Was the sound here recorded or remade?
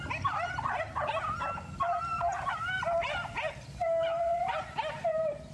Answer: recorded